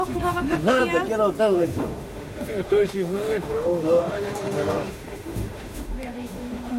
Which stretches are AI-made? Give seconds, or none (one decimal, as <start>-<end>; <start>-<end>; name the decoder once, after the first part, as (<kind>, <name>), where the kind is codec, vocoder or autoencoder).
0.0-0.8 (autoencoder, DAC-VAE); 1.4-6.8